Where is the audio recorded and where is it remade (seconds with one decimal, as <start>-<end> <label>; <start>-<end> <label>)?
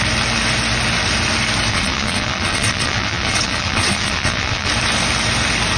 0.0-1.7 recorded; 1.7-4.7 remade; 4.7-5.8 recorded